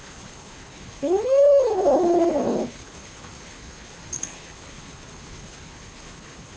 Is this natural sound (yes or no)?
no